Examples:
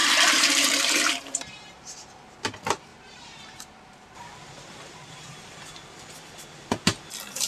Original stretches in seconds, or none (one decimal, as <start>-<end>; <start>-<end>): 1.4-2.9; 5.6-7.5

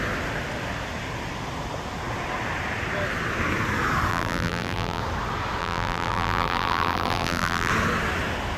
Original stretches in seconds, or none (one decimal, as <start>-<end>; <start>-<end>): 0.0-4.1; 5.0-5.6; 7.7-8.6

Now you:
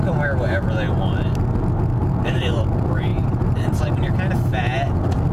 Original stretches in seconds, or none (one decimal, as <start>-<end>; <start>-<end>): 0.0-2.0; 2.6-3.1; 3.9-5.3

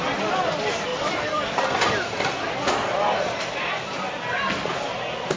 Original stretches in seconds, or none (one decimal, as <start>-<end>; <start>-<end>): 0.0-0.9; 4.1-5.4

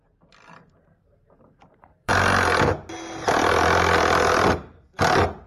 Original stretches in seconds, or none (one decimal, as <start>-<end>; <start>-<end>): 0.0-0.6; 2.1-5.5

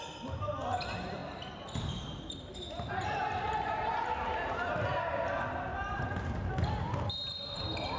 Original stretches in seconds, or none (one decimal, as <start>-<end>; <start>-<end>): 0.0-5.7; 6.5-8.0